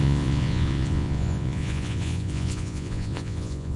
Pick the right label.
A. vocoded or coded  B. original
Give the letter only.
A